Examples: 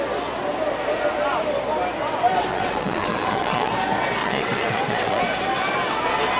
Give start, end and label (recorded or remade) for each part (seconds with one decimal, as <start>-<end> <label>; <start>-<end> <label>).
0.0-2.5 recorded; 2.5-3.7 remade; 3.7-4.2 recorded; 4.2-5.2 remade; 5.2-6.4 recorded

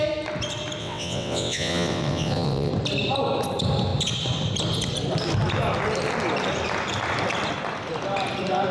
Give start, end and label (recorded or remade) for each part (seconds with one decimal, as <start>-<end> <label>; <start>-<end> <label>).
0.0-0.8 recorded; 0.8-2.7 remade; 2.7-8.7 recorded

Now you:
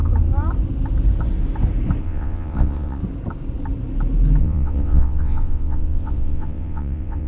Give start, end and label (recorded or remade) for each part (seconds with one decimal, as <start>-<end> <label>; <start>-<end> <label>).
0.0-2.0 recorded; 2.0-3.0 remade; 3.0-4.4 recorded; 4.4-7.3 remade